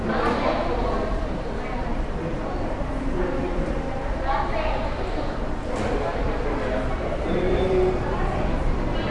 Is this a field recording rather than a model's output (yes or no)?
no